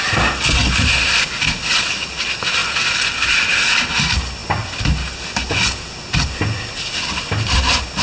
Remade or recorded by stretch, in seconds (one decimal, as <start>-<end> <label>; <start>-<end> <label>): 0.0-8.0 recorded